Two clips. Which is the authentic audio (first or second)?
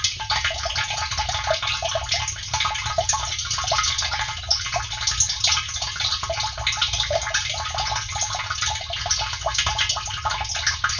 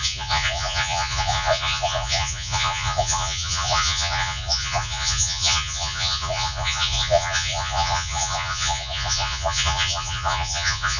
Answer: first